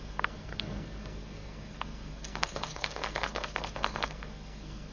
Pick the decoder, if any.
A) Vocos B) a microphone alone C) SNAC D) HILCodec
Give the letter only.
C